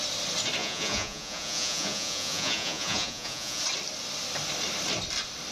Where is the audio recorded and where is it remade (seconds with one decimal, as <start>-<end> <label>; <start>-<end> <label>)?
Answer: 0.0-0.6 recorded; 0.6-3.6 remade; 3.6-5.5 recorded

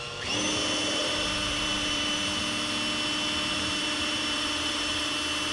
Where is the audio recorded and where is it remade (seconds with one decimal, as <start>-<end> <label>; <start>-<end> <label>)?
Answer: 0.0-1.0 recorded; 1.0-2.4 remade; 2.4-3.5 recorded; 3.5-5.1 remade; 5.1-5.5 recorded

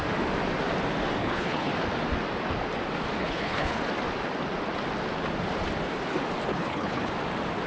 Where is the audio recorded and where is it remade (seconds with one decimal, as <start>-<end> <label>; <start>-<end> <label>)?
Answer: 0.0-1.2 recorded; 1.2-1.7 remade; 1.7-3.2 recorded; 3.2-3.8 remade; 3.8-6.5 recorded; 6.5-7.1 remade; 7.1-7.7 recorded